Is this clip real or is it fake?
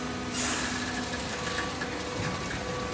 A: real